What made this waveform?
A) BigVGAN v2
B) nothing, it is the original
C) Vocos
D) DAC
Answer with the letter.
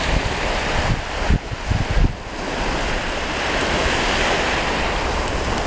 B